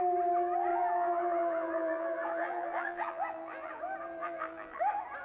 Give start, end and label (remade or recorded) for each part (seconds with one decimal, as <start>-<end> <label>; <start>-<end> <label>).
0.0-0.7 recorded; 0.7-3.8 remade; 3.8-4.2 recorded; 4.2-4.8 remade; 4.8-5.2 recorded